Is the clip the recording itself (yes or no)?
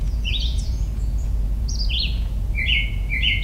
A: no